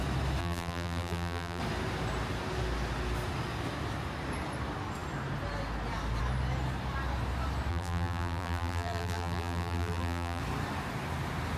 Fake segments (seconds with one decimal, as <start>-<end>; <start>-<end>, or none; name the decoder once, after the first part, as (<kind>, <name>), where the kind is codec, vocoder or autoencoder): 0.4-1.6 (vocoder, BigVGAN v2); 7.7-10.4